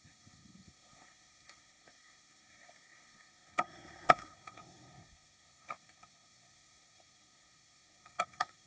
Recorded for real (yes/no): no